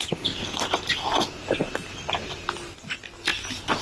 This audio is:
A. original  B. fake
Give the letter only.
A